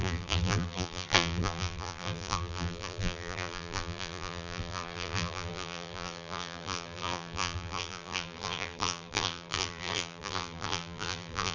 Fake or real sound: fake